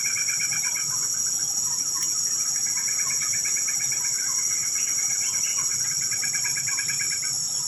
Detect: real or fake real